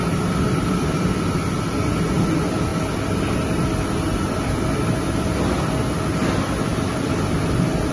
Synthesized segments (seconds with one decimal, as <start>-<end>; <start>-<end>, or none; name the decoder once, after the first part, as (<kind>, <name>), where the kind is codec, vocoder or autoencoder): none